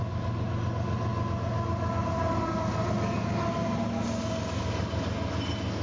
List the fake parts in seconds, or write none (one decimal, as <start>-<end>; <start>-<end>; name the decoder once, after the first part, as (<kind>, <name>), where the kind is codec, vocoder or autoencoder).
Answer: none